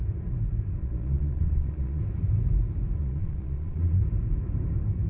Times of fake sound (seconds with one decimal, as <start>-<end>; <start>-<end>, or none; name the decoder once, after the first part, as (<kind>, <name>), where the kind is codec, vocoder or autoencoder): 0.8-2.0 (vocoder, Vocos); 3.0-4.0